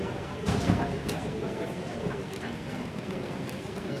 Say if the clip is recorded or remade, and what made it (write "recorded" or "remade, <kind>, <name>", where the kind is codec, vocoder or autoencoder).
remade, codec, SNAC